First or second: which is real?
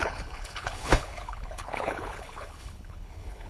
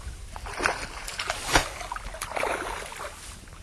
second